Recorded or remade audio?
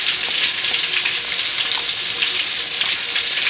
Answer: remade